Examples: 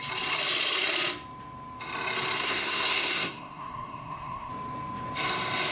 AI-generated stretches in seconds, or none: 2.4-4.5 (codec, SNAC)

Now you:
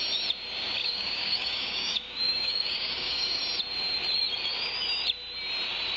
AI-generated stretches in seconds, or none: 0.8-3.4 (codec, DAC)

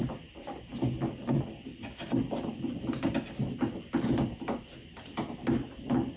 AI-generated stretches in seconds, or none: none